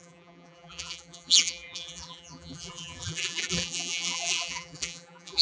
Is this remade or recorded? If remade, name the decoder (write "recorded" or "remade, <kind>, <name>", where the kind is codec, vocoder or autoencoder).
remade, vocoder, BigVGAN v2